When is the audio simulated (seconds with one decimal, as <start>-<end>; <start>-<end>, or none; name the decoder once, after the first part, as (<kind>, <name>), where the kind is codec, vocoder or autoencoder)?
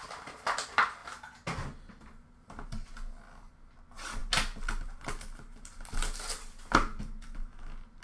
none